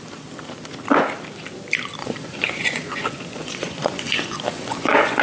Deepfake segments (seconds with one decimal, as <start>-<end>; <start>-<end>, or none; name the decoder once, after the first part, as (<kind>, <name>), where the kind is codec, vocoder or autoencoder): 2.0-5.2 (vocoder, Vocos)